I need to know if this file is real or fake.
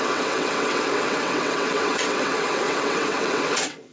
fake